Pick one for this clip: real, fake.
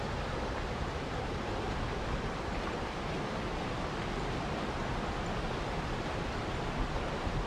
real